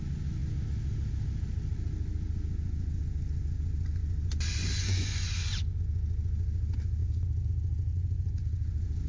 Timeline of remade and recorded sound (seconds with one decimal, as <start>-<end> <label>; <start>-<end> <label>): 0.0-4.6 recorded; 4.6-5.8 remade; 5.8-7.9 recorded; 7.9-8.4 remade; 8.4-9.1 recorded